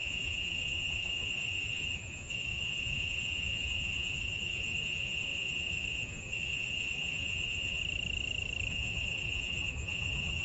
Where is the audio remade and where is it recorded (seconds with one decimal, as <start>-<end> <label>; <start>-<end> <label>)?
0.0-7.8 remade; 7.8-8.7 recorded; 8.7-10.4 remade